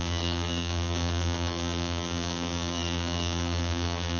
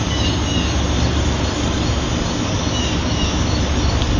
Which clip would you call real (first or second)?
second